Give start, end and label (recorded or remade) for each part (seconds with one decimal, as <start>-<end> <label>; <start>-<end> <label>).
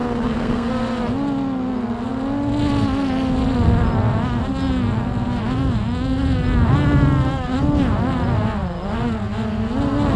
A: 0.0-0.7 remade; 0.7-10.2 recorded